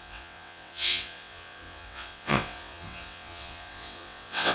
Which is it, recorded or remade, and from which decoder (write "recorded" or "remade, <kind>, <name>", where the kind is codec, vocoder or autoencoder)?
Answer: remade, vocoder, WaveNeXt